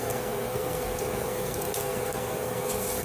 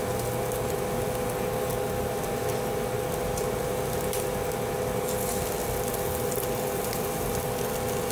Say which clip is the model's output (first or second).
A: first